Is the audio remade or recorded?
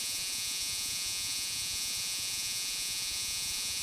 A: remade